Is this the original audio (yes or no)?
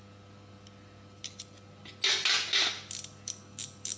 yes